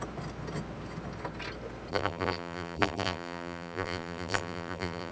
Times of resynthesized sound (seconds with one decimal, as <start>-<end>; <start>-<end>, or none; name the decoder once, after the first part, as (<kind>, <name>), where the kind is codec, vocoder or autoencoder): 1.9-5.1 (vocoder, BigVGAN v2)